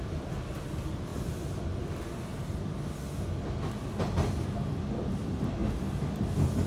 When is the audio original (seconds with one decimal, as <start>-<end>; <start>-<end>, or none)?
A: 0.0-6.7